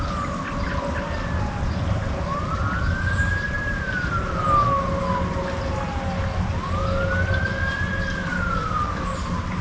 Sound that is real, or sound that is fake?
real